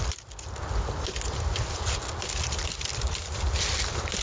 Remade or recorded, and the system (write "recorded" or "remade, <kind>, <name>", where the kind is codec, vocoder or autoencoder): recorded